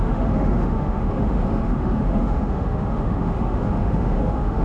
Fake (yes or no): yes